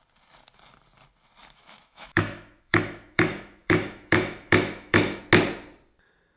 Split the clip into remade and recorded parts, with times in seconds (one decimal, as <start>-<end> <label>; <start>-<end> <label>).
0.0-1.4 recorded; 1.4-5.2 remade; 5.2-6.4 recorded